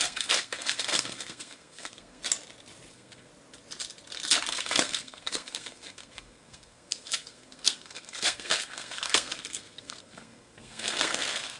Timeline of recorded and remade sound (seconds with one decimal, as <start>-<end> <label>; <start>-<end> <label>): 0.0-2.2 remade; 2.2-2.9 recorded; 2.9-3.3 remade; 3.3-4.5 recorded; 4.5-11.6 remade